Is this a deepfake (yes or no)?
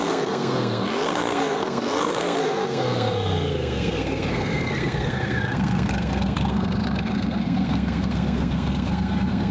yes